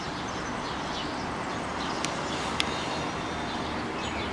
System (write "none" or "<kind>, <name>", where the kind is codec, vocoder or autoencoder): none